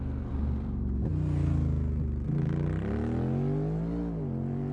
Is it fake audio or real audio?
real